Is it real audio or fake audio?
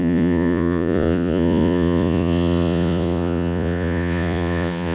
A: fake